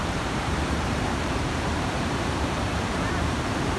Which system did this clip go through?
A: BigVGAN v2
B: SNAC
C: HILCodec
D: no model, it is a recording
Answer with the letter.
A